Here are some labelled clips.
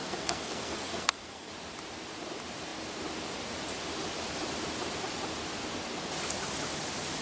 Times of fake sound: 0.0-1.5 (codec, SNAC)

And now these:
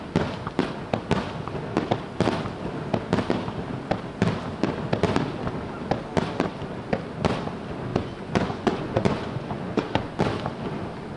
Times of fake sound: 7.9-10.2 (vocoder, Vocos)

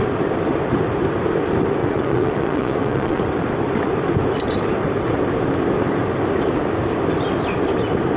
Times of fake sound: 1.8-3.2 (vocoder, Vocos)